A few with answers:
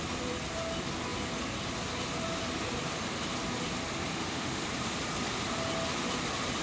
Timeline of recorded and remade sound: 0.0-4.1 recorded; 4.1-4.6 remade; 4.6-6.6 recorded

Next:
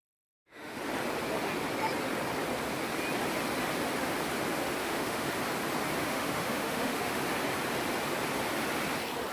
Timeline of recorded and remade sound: 0.0-0.8 remade; 0.8-4.8 recorded; 4.8-5.3 remade; 5.3-6.0 recorded; 6.0-7.2 remade; 7.2-9.3 recorded